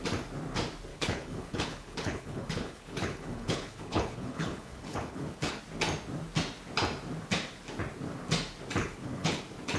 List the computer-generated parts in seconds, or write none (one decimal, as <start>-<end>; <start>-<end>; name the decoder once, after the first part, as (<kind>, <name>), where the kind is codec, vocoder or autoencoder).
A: 0.9-5.6 (codec, HILCodec); 8.8-9.4